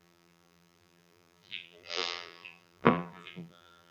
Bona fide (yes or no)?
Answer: no